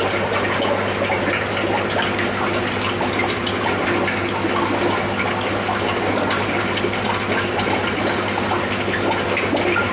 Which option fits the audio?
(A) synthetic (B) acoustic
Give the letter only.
B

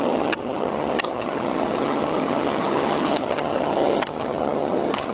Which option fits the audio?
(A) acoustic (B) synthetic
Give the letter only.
B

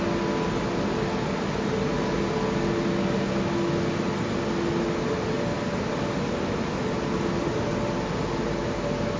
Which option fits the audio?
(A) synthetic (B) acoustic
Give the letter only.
B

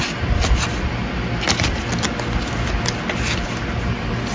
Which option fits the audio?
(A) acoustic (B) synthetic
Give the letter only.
A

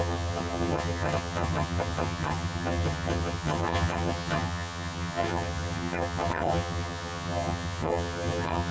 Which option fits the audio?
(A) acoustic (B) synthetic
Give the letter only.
B